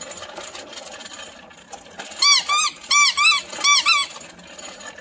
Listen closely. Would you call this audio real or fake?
real